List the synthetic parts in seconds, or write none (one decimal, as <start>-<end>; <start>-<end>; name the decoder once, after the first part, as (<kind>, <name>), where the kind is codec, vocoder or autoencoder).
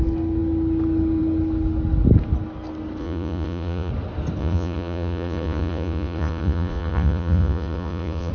3.0-3.9 (vocoder, Vocos); 4.4-8.3